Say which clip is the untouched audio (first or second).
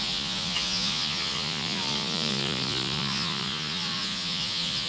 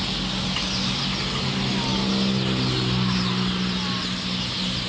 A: second